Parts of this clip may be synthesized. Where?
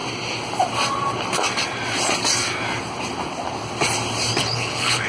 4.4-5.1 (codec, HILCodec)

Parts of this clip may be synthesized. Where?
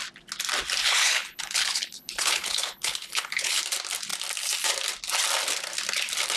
0.8-3.6 (codec, HILCodec)